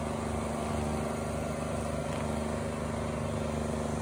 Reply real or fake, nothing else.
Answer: real